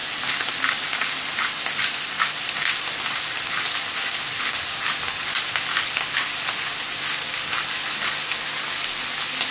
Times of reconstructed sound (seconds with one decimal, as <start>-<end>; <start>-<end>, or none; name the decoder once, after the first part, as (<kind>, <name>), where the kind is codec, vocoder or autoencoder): none